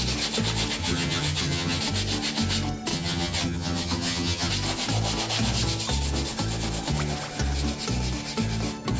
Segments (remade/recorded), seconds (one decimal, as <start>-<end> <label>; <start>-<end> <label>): 0.0-0.8 recorded; 0.8-1.8 remade; 1.8-2.9 recorded; 2.9-4.5 remade; 4.5-9.0 recorded